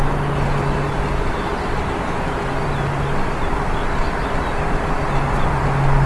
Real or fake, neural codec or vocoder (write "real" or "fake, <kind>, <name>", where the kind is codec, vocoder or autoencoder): real